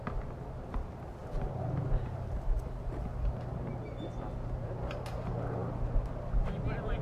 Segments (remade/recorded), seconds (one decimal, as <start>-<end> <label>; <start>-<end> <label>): 0.0-1.2 recorded; 1.2-5.0 remade; 5.0-7.0 recorded